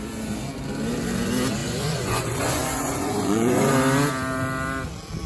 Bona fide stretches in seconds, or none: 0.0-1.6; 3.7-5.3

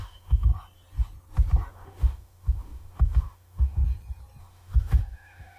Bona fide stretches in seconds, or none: 0.5-1.7; 3.8-4.4

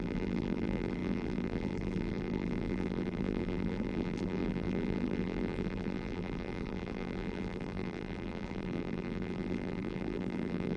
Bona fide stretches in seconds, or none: none